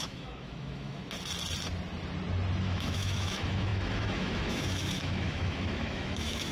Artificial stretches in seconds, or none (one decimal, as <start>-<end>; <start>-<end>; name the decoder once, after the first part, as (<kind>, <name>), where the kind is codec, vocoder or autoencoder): 0.0-1.0 (autoencoder, DAC-VAE); 2.6-6.5